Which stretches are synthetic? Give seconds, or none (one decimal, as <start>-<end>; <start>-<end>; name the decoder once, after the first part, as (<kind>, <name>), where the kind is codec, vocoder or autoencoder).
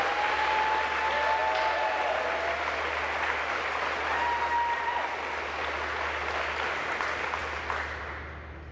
none